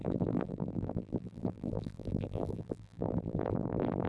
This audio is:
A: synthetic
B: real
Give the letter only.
A